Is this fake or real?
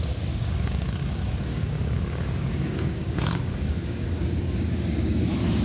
fake